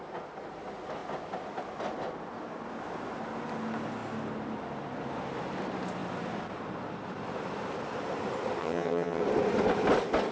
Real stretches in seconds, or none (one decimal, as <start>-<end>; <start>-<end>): 0.0-8.6; 9.2-10.3